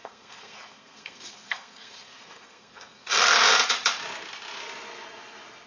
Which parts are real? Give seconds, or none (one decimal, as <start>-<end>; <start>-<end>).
3.4-5.7